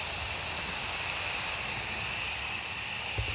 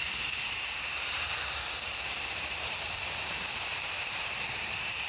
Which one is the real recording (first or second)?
first